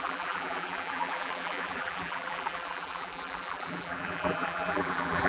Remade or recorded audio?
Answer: remade